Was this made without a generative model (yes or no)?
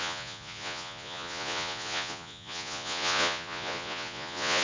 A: no